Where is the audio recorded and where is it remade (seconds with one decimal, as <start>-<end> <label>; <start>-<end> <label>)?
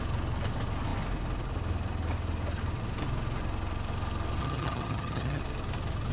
0.0-4.4 recorded; 4.4-5.4 remade; 5.4-6.1 recorded